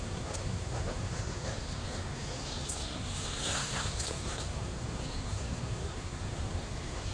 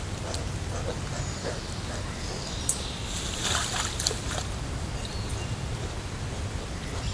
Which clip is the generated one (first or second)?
first